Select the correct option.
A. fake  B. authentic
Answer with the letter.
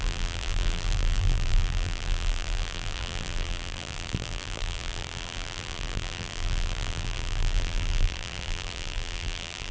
A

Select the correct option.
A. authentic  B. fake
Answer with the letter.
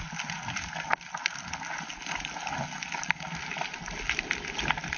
A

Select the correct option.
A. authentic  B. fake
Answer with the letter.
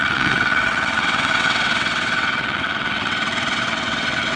B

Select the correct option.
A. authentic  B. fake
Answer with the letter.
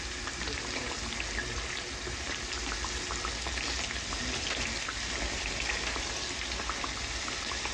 A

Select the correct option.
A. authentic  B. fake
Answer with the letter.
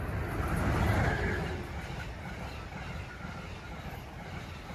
A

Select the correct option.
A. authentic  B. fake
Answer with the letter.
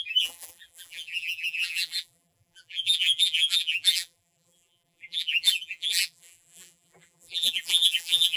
B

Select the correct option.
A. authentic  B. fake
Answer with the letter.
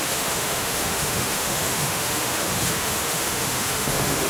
B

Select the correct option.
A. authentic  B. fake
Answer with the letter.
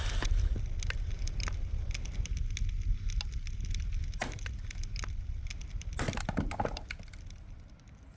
A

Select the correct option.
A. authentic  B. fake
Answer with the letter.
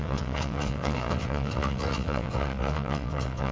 B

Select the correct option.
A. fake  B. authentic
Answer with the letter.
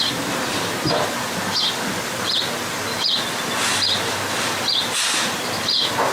B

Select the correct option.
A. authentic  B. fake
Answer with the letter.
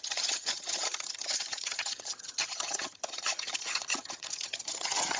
B